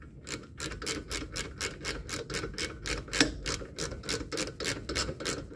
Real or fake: real